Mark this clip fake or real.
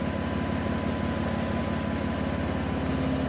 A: real